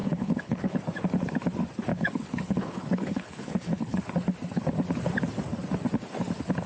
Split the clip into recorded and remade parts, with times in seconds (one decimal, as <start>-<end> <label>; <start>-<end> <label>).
0.0-0.8 remade; 0.8-1.9 recorded; 1.9-4.0 remade; 4.0-6.7 recorded